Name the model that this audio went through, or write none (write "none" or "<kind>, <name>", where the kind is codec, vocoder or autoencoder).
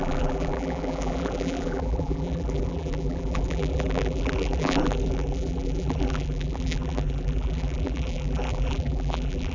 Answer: vocoder, BigVGAN v2